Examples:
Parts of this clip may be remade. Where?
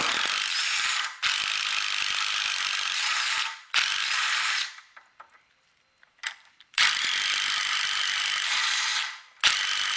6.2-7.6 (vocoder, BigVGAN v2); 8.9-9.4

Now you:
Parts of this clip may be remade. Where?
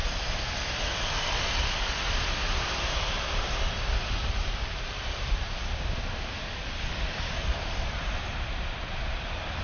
2.5-5.4 (vocoder, BigVGAN v2); 7.1-9.6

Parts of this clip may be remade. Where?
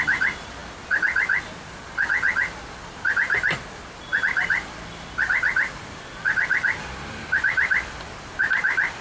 0.0-0.6 (vocoder, BigVGAN v2); 4.2-9.0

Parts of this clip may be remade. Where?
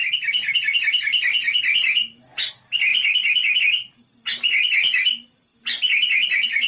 none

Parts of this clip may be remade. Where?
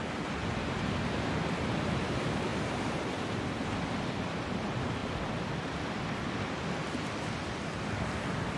none